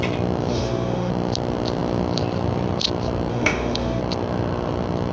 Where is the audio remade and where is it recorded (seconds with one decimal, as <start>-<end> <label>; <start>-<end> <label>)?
0.0-0.5 recorded; 0.5-1.1 remade; 1.1-3.3 recorded; 3.3-4.0 remade; 4.0-5.1 recorded